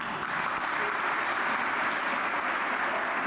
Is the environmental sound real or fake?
real